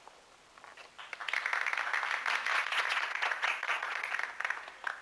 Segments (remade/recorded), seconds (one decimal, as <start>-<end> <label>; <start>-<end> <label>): 0.0-2.5 recorded; 2.5-4.1 remade; 4.1-5.0 recorded